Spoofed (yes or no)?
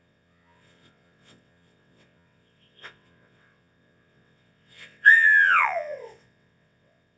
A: yes